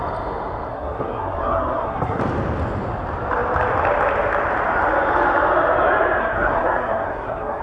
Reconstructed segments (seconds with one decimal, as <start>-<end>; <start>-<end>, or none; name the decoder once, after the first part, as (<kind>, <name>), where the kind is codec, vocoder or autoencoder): 0.7-2.2 (codec, SNAC); 6.2-7.6